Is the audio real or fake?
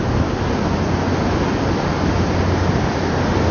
real